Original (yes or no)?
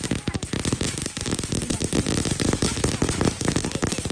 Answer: yes